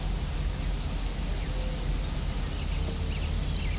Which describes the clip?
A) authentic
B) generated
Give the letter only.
A